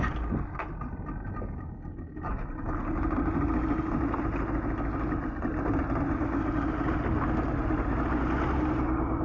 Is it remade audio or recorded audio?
recorded